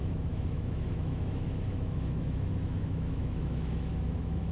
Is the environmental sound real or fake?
fake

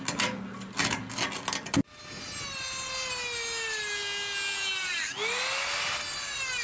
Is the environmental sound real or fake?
real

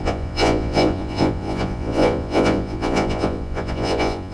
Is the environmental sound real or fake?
fake